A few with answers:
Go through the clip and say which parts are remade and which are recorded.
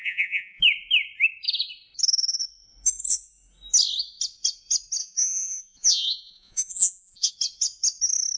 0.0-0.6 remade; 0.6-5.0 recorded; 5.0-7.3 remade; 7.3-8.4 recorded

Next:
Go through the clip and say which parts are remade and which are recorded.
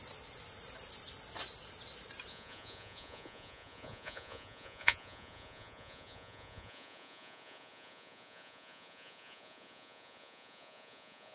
0.0-2.3 recorded; 2.3-11.3 remade